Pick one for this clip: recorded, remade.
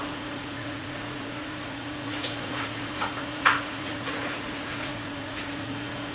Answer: remade